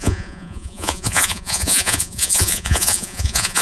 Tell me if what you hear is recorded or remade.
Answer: remade